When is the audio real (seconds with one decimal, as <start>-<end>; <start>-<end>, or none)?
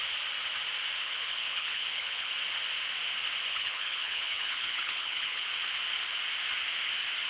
0.0-1.0; 2.3-3.5; 5.5-7.3